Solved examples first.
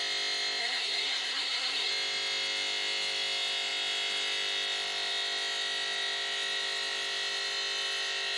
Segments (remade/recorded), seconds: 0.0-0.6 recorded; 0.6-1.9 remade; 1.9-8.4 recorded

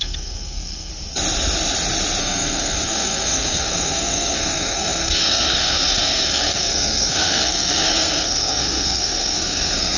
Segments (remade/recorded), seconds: 0.0-0.9 remade; 0.9-2.2 recorded; 2.2-10.0 remade

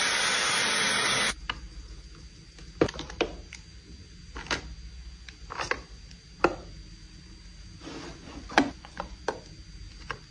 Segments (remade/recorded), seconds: 0.0-8.1 recorded; 8.1-9.2 remade; 9.2-10.3 recorded

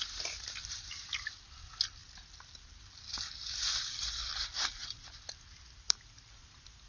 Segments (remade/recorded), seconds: 0.0-4.8 recorded; 4.8-6.0 remade; 6.0-6.9 recorded